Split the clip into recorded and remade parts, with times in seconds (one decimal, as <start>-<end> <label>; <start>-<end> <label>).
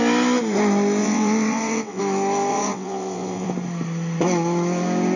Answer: 0.0-1.0 recorded; 1.0-2.0 remade; 2.0-2.5 recorded; 2.5-3.5 remade; 3.5-5.2 recorded